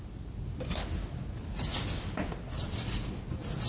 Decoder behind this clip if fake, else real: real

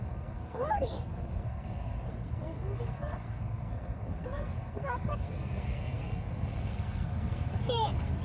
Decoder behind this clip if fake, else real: fake, codec, SNAC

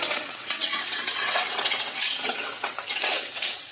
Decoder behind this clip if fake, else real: fake, vocoder, WaveNeXt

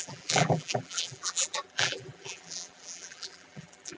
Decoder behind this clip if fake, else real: fake, vocoder, BigVGAN v2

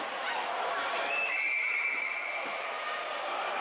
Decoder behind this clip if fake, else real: real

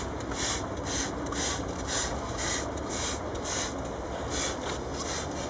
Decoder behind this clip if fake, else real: real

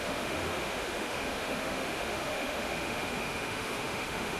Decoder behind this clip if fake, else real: fake, autoencoder, DAC-VAE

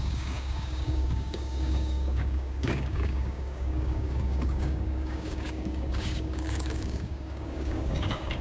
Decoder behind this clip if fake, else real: fake, codec, DAC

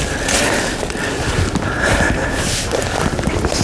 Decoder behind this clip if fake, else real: real